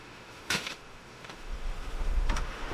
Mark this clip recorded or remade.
remade